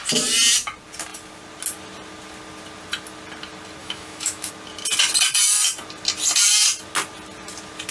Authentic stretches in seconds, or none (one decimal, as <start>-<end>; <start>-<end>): 0.0-3.8; 4.5-7.9